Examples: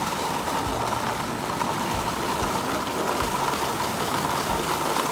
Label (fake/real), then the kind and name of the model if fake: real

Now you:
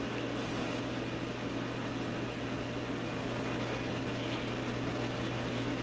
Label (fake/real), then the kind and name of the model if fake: real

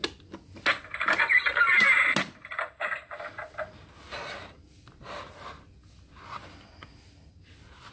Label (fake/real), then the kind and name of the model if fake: real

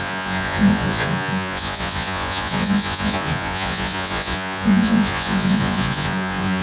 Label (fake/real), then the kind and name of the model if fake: fake, vocoder, Vocos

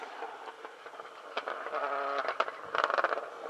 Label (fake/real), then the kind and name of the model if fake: real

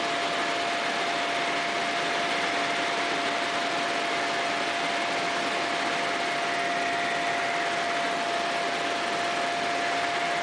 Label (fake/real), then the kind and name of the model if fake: real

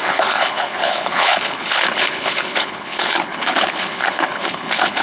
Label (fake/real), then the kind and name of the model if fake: fake, codec, HILCodec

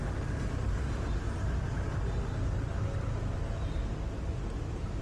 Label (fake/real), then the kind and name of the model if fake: real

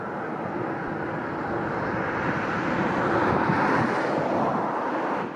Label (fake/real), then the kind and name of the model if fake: real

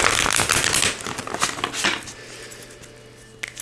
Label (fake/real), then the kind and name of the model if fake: real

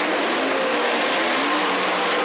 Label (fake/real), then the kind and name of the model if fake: real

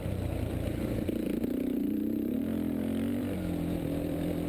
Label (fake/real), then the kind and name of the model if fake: fake, vocoder, BigVGAN v2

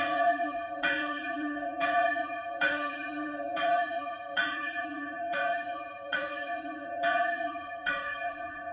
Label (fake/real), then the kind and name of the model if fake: fake, vocoder, Vocos